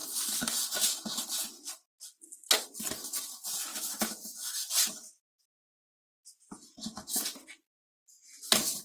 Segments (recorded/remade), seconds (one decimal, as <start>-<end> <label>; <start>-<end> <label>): 0.0-3.7 recorded; 3.7-4.7 remade; 4.7-8.8 recorded